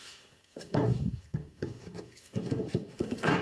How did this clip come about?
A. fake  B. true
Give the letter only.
A